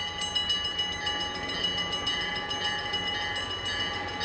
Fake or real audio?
real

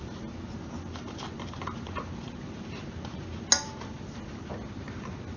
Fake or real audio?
real